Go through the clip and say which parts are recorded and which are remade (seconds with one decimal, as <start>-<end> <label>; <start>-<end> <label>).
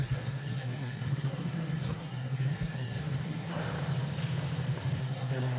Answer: 0.0-3.6 remade; 3.6-5.0 recorded; 5.0-5.6 remade